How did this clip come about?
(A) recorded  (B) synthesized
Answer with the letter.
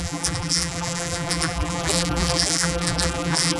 B